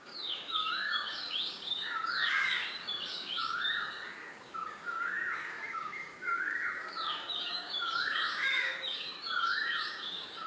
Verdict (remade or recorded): remade